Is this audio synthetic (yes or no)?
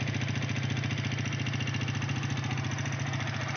no